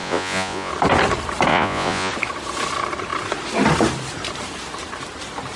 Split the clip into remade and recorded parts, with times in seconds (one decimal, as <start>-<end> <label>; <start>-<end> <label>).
0.0-0.7 remade; 0.7-1.5 recorded; 1.5-2.1 remade; 2.1-5.6 recorded